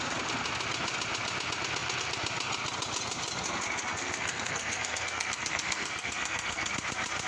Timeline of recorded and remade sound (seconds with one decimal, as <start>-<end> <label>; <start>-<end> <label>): 0.0-3.9 recorded; 3.9-6.7 remade; 6.7-7.3 recorded